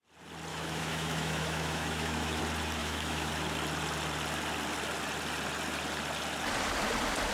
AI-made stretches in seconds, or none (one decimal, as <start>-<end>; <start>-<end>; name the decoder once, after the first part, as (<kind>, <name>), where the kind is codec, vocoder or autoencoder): 0.5-2.4 (autoencoder, DAC-VAE); 2.8-3.3